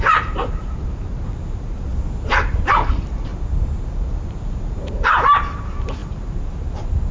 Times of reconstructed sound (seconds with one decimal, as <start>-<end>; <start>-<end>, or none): 0.0-1.9; 2.7-3.3; 4.9-7.1